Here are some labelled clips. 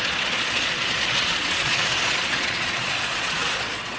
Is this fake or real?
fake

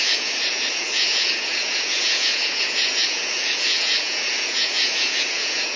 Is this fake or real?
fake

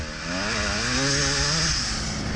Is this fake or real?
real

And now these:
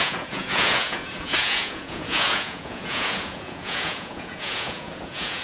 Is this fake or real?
fake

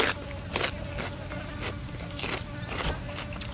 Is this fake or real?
real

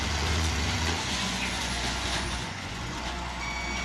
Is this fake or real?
fake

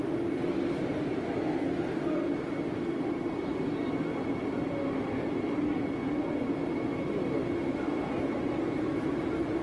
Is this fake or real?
real